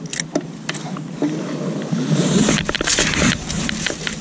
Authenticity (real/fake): real